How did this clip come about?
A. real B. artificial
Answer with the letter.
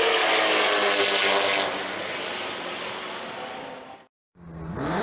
A